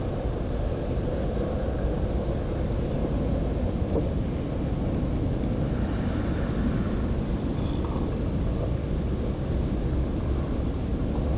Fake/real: real